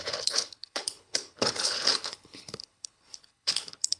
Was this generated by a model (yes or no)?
yes